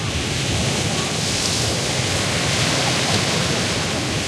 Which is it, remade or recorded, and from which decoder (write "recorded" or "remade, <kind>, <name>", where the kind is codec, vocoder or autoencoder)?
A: recorded